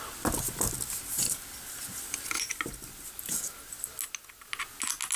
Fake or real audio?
real